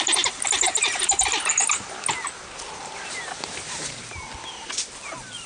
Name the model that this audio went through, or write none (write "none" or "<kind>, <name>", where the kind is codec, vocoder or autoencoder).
none